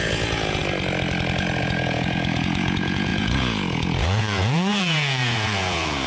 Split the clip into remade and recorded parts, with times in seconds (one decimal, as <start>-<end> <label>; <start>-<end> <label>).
0.0-0.6 remade; 0.6-1.6 recorded; 1.6-6.1 remade